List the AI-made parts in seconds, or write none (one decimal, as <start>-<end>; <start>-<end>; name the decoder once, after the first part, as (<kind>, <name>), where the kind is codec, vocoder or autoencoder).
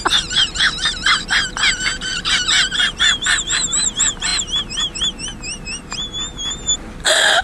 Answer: 0.0-4.3 (vocoder, BigVGAN v2)